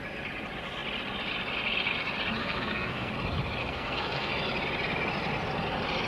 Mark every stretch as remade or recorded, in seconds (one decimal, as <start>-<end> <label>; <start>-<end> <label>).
0.0-2.4 recorded; 2.4-3.1 remade; 3.1-3.6 recorded; 3.6-4.3 remade; 4.3-6.1 recorded